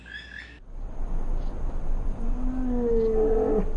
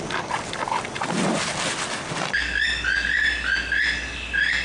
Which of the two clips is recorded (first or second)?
first